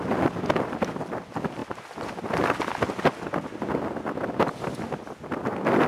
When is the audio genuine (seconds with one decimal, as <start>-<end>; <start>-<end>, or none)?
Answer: 0.0-5.9